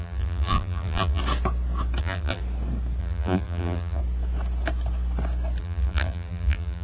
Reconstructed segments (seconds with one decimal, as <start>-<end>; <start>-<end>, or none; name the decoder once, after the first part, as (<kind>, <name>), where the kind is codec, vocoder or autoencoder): 0.0-1.2 (vocoder, BigVGAN v2); 2.0-2.4; 3.0-4.0; 5.6-6.8